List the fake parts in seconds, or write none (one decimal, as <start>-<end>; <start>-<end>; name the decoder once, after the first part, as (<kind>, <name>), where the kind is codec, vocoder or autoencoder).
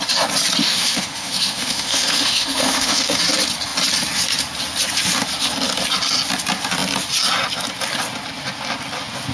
0.6-3.2 (autoencoder, DAC-VAE)